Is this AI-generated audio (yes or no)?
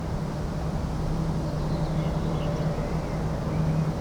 no